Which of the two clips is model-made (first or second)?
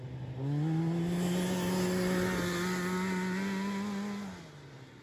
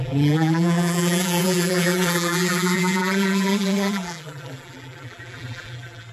second